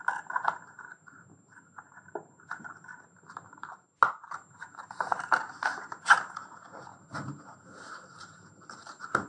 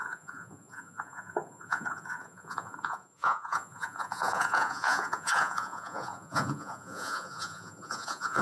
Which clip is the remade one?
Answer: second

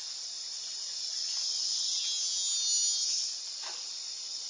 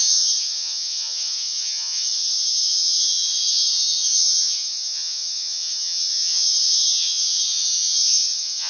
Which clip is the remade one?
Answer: second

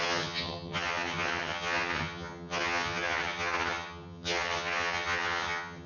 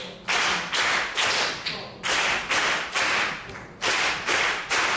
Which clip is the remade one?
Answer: first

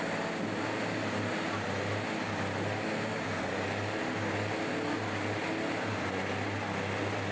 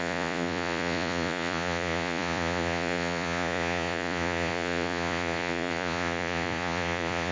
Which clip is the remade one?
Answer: second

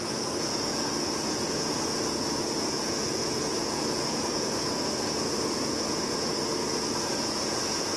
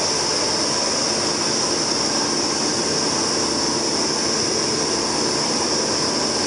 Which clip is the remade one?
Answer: first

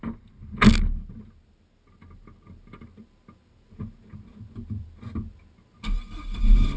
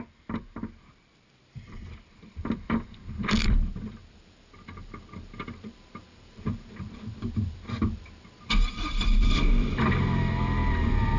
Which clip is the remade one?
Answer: second